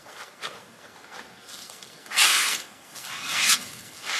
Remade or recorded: remade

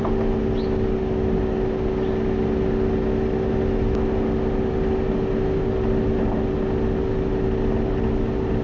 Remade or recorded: recorded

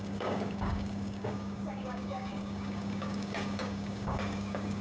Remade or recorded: remade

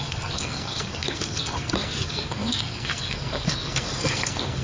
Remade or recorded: remade